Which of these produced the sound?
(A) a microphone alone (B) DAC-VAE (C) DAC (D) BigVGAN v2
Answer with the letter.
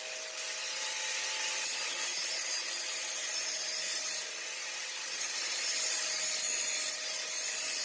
A